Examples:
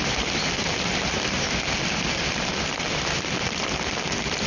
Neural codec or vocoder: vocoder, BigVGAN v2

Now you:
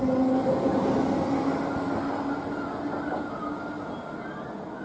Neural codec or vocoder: none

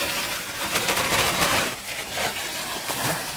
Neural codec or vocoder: vocoder, BigVGAN v2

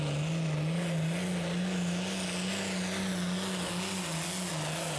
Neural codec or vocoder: none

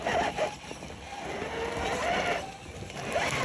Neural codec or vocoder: none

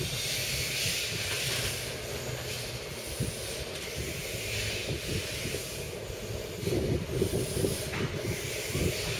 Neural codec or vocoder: none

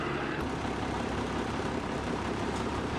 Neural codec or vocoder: vocoder, BigVGAN v2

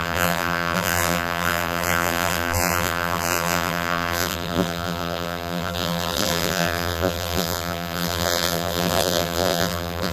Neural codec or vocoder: vocoder, BigVGAN v2